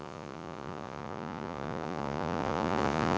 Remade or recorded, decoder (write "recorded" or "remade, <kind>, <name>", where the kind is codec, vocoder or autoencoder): remade, vocoder, Vocos